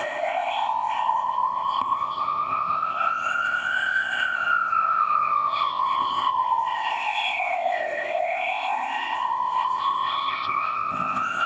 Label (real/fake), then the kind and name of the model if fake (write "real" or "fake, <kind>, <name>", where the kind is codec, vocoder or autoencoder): fake, codec, ZipCodec